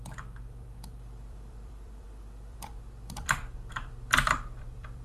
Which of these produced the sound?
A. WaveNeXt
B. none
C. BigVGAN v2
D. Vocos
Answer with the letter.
C